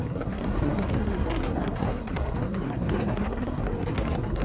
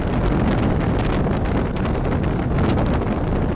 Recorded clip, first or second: second